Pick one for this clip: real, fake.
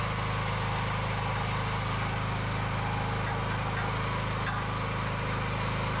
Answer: real